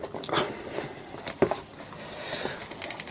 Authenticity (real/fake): real